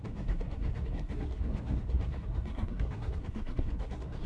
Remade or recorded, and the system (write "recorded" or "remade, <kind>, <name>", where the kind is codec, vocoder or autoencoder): remade, codec, SNAC